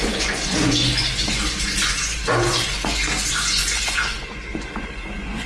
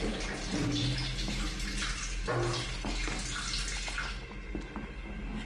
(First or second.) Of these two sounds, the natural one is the second